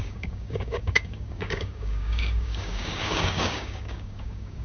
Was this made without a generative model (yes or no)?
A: no